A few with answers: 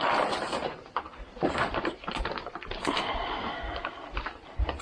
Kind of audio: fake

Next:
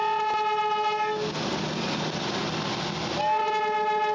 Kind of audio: real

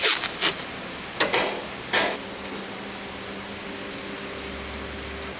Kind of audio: real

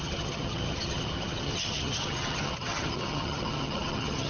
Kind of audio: fake